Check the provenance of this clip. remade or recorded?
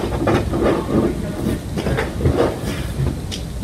recorded